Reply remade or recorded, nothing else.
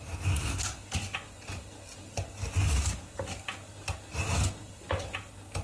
recorded